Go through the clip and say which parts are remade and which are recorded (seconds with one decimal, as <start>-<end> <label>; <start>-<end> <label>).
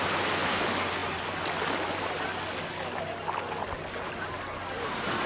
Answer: 0.0-5.3 recorded